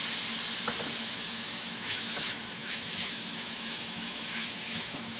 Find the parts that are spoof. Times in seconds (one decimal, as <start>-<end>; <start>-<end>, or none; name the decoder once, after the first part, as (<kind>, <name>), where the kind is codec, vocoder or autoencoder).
1.0-5.2 (autoencoder, DAC-VAE)